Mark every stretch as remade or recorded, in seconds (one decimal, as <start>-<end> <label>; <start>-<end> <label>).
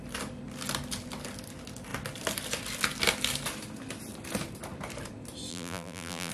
0.0-5.5 recorded; 5.5-6.3 remade